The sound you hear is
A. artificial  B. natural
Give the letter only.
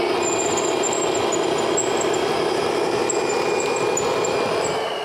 B